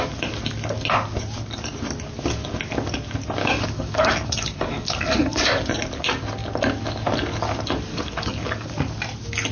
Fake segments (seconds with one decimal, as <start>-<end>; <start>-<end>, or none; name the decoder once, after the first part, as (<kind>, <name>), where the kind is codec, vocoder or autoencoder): 3.4-5.4 (codec, DAC); 7.9-8.7